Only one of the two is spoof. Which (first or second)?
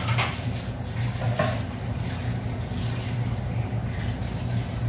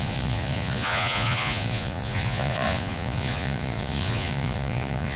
second